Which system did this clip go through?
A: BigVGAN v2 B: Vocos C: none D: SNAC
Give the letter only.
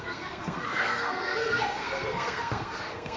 D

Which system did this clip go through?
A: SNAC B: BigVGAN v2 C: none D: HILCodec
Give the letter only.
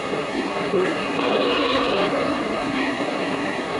A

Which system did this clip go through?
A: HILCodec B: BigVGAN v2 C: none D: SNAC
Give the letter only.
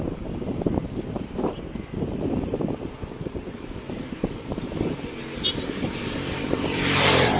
B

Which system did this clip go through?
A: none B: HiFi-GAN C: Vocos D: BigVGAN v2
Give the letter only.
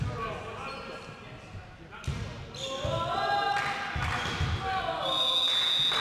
A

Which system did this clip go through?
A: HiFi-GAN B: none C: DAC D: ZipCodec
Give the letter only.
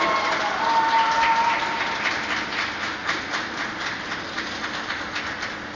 B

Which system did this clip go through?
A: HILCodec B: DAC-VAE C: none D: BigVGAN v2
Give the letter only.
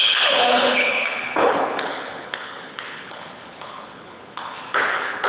A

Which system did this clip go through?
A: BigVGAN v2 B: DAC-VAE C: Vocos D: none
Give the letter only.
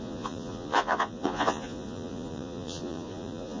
C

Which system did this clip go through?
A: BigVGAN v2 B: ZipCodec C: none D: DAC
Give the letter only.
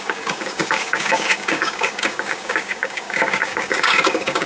D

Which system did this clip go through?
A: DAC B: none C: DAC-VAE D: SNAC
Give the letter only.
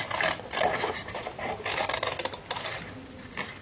B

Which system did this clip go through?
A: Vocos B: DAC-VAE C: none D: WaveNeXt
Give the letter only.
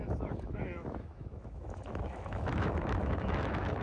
B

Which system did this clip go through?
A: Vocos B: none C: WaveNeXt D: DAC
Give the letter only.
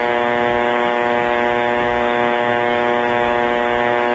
D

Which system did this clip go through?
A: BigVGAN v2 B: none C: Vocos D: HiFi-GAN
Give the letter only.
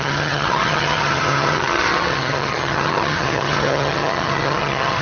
D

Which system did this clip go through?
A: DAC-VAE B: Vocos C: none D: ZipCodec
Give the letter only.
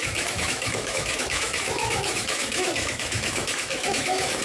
A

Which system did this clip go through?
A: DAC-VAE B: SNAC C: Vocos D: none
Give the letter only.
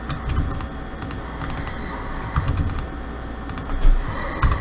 D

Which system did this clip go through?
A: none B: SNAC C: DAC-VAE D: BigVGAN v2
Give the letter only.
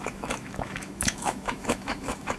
C